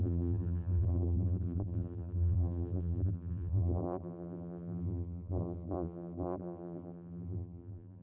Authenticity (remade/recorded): remade